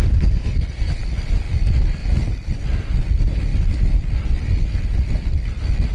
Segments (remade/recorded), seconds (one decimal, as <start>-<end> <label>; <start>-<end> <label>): 0.0-5.9 recorded